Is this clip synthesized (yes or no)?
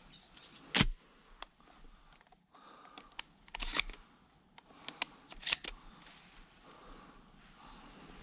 no